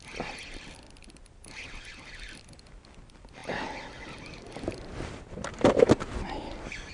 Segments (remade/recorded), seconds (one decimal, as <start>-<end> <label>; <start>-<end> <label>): 0.0-6.9 recorded